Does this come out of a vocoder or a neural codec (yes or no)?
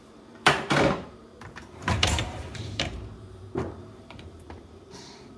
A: yes